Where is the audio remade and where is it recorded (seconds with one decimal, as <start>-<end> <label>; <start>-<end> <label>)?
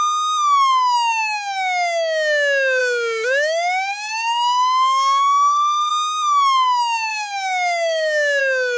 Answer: 0.0-2.8 recorded; 2.8-5.9 remade; 5.9-7.1 recorded; 7.1-8.4 remade; 8.4-8.8 recorded